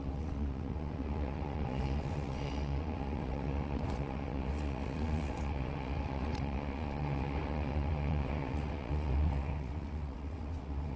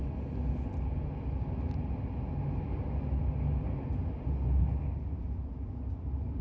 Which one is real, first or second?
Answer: second